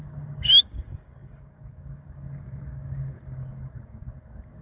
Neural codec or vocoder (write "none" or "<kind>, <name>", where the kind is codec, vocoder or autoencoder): codec, DAC